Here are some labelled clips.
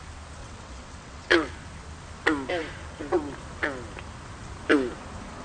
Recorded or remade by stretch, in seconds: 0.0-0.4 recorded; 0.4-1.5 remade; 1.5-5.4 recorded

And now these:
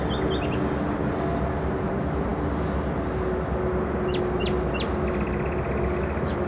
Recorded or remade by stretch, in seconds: 0.0-6.5 recorded